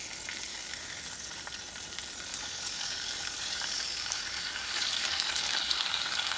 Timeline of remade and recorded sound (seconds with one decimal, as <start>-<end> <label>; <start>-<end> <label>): 0.0-0.5 recorded; 0.5-1.0 remade; 1.0-2.3 recorded; 2.3-6.4 remade